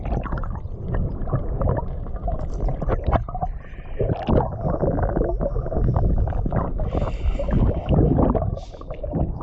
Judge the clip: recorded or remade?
recorded